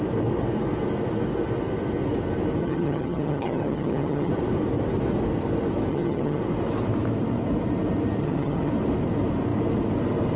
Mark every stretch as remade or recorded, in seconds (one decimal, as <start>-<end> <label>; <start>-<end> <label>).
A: 0.0-2.6 recorded; 2.6-4.3 remade; 4.3-5.9 recorded; 5.9-6.4 remade; 6.4-8.2 recorded; 8.2-8.7 remade; 8.7-10.4 recorded